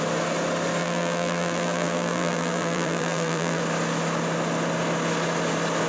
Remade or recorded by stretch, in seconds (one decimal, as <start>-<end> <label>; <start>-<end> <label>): 0.0-0.8 recorded; 0.8-3.6 remade; 3.6-5.9 recorded